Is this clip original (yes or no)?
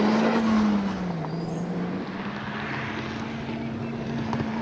yes